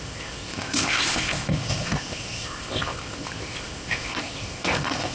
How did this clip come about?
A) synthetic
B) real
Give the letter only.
A